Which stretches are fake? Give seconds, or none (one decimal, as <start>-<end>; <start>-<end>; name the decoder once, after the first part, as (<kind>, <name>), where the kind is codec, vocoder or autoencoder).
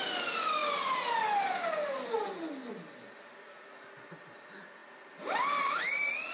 none